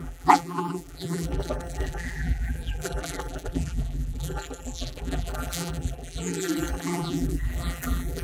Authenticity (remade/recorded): remade